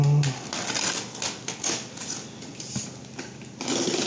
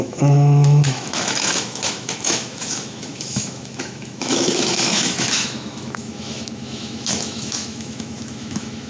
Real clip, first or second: first